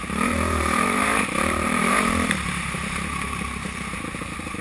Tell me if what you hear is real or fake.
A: fake